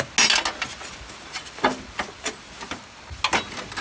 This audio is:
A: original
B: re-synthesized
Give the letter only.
A